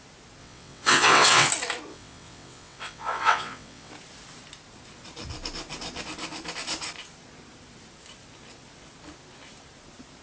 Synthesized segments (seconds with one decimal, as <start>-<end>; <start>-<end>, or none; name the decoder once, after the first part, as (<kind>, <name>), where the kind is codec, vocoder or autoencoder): 0.4-1.5 (vocoder, WaveNeXt); 1.9-3.9